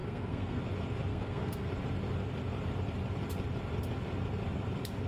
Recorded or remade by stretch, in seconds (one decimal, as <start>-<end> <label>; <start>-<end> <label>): 0.0-0.6 remade; 0.6-1.1 recorded; 1.1-1.7 remade; 1.7-5.1 recorded